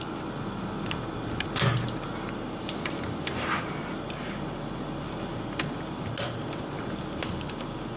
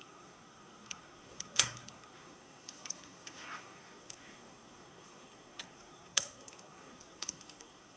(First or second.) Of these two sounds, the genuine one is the first